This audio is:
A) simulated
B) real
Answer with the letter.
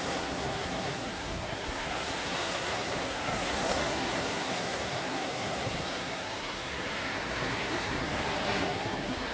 A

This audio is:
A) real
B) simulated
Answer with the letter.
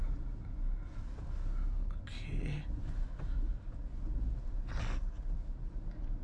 A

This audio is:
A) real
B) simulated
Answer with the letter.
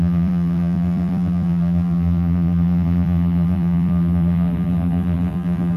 B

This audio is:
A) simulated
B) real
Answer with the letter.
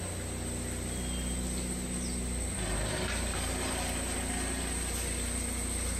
B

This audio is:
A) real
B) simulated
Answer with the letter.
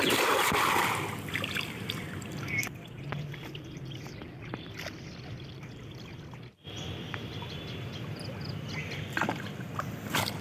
B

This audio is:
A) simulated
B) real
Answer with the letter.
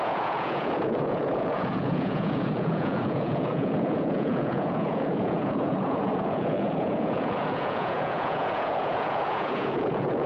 A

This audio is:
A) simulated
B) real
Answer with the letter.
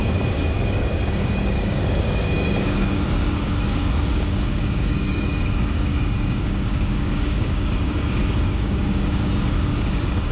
A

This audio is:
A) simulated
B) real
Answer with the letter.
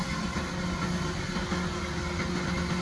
B